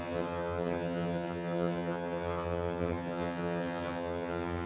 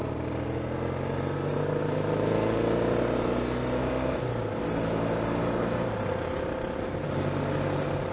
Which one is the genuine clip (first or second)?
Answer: second